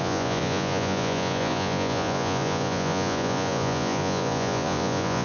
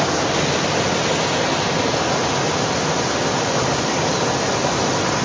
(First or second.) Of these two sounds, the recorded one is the second